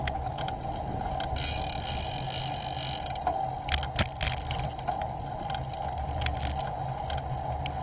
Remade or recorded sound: recorded